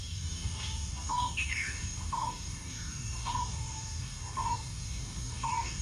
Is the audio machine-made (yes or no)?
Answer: yes